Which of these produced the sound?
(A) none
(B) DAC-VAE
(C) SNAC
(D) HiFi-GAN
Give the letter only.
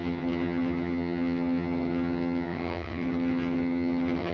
D